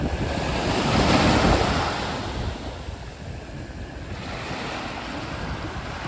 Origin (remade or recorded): recorded